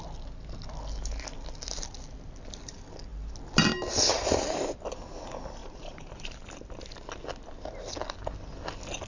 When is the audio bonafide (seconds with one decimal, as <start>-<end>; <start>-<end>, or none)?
0.0-5.6; 6.4-9.1